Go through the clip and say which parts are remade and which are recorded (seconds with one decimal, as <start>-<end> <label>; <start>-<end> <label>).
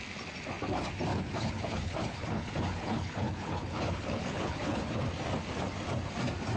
0.0-1.1 recorded; 1.1-4.9 remade; 4.9-6.6 recorded